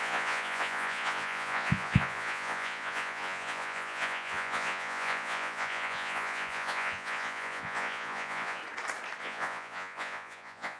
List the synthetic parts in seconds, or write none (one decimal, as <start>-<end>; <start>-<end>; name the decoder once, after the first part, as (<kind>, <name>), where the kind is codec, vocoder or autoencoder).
0.0-8.6 (vocoder, Vocos); 9.2-10.8